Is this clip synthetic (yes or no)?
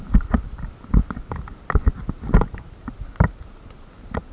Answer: no